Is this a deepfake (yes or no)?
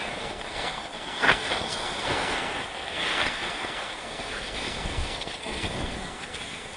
yes